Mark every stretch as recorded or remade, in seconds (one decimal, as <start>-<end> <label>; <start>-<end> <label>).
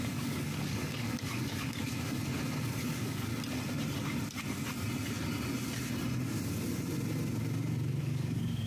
0.0-2.2 remade; 2.2-2.8 recorded; 2.8-3.3 remade; 3.3-8.0 recorded; 8.0-8.7 remade